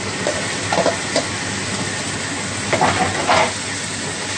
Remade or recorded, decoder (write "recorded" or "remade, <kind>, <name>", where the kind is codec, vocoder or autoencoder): recorded